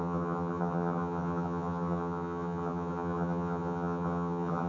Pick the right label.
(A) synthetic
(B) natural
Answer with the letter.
A